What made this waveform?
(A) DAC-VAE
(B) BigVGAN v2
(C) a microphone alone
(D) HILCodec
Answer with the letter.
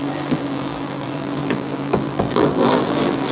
B